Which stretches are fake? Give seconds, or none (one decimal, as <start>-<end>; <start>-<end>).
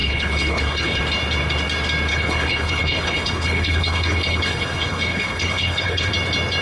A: 0.0-1.0; 2.1-6.1